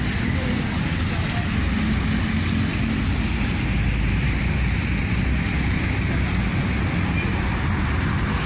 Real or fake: real